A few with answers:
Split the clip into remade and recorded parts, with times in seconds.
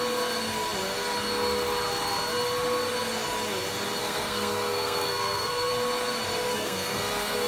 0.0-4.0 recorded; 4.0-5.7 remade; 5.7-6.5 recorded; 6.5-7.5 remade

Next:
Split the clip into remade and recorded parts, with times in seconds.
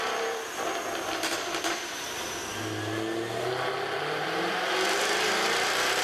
0.0-2.4 remade; 2.4-4.0 recorded; 4.0-6.0 remade